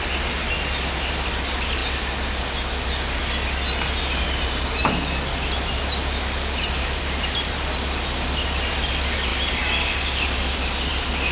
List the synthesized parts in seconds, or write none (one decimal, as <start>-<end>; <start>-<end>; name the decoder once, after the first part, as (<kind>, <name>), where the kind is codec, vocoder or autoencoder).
none